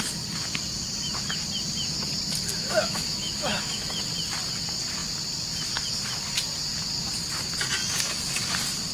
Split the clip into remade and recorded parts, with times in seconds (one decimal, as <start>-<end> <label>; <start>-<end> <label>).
0.0-2.5 recorded; 2.5-4.0 remade; 4.0-8.9 recorded

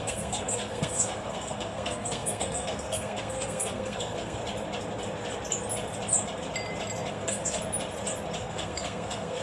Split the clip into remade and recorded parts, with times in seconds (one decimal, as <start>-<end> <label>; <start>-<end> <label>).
0.0-4.4 remade; 4.4-7.1 recorded; 7.1-7.6 remade; 7.6-8.4 recorded; 8.4-9.4 remade

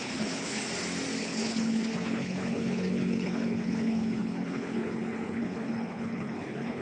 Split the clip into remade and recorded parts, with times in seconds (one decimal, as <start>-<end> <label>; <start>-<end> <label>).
0.0-0.6 remade; 0.6-1.2 recorded; 1.2-6.8 remade

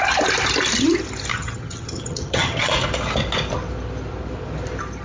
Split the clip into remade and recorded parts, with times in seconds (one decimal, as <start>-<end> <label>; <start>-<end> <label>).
0.0-1.3 recorded; 1.3-2.7 remade; 2.7-5.0 recorded